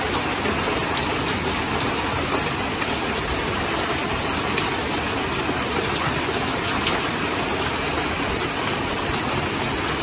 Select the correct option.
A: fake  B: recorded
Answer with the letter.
B